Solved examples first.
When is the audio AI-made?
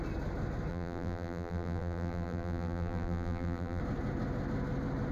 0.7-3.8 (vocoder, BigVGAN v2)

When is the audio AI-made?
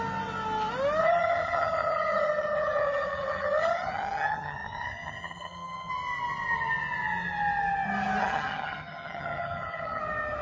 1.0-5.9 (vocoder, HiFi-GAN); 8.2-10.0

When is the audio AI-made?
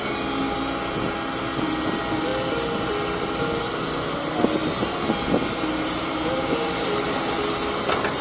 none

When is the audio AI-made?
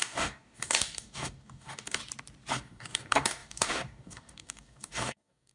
0.0-2.0 (codec, DAC); 2.5-5.5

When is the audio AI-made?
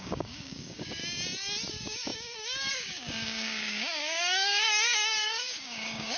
0.0-1.0 (codec, DAC); 1.7-6.2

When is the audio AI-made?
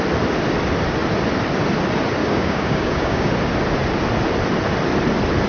2.2-3.3 (codec, DAC)